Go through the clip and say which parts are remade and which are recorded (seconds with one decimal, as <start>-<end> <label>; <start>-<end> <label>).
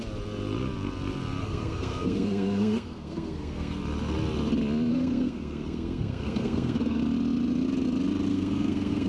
0.0-1.4 recorded; 1.4-3.8 remade; 3.8-4.9 recorded; 4.9-7.0 remade; 7.0-8.3 recorded; 8.3-9.1 remade